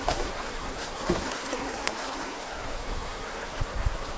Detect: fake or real fake